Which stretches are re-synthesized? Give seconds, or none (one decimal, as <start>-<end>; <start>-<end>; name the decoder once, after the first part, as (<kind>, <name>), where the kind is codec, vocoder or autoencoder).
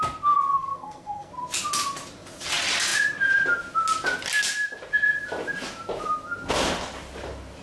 0.5-1.3 (codec, SNAC)